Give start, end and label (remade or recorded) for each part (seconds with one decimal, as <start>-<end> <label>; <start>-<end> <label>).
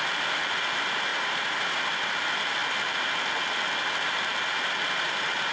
0.0-1.1 recorded; 1.1-1.8 remade; 1.8-5.5 recorded